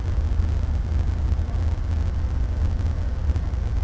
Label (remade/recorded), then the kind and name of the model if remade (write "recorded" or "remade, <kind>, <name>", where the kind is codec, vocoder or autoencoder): recorded